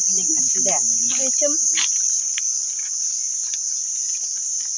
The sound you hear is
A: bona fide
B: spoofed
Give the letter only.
A